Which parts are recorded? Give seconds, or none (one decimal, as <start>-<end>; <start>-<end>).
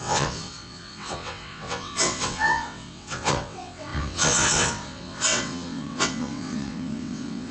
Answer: none